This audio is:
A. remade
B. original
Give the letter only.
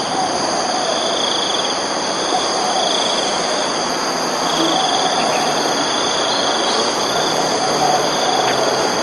A